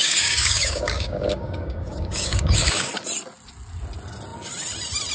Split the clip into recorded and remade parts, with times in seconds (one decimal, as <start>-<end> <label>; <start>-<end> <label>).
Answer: 0.0-2.9 remade; 2.9-5.1 recorded